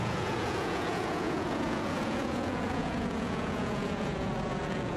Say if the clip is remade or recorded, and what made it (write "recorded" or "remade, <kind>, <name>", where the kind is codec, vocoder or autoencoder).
remade, vocoder, Vocos